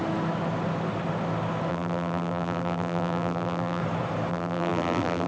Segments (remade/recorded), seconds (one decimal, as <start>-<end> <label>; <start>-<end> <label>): 0.0-1.7 recorded; 1.7-3.8 remade; 3.8-4.3 recorded; 4.3-5.3 remade